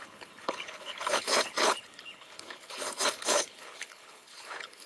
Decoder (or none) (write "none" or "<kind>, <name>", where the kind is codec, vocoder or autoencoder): codec, HILCodec